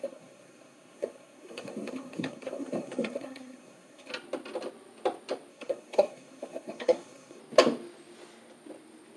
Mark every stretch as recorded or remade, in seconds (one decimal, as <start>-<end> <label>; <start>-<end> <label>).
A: 0.0-4.1 remade; 4.1-5.5 recorded; 5.5-7.4 remade; 7.4-9.2 recorded